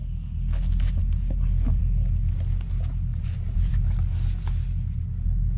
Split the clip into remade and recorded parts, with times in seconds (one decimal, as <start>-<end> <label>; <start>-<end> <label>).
0.0-3.1 recorded; 3.1-3.8 remade; 3.8-5.6 recorded